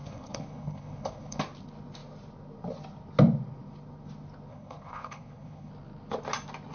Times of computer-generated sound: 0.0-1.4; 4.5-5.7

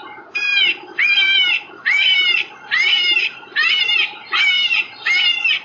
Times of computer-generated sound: 0.5-3.9

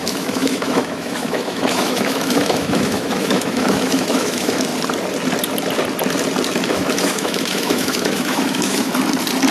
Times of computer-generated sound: 0.0-4.7; 6.7-8.9

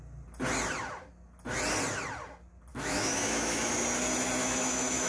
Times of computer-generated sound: 2.7-3.7; 4.4-5.1

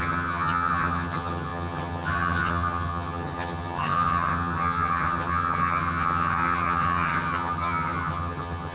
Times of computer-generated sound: 0.0-8.7

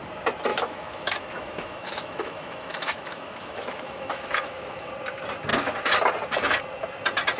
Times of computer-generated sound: 0.5-4.9